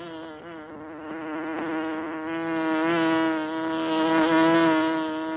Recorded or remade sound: recorded